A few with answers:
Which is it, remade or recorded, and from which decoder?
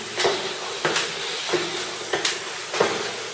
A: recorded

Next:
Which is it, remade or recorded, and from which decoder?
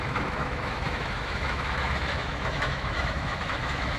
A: remade, autoencoder, DAC-VAE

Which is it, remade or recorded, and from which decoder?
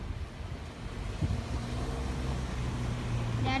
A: recorded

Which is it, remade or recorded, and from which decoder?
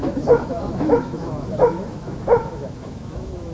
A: remade, autoencoder, DAC-VAE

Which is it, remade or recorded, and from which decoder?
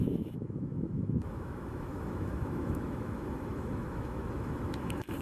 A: remade, autoencoder, DAC-VAE